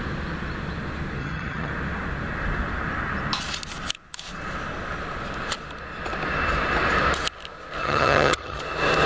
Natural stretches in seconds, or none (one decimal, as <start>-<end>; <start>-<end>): 0.0-1.2; 1.7-7.8; 8.6-9.1